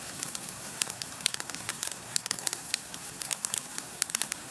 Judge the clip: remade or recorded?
remade